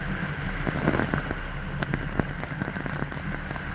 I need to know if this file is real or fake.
real